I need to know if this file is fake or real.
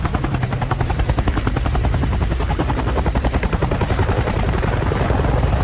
fake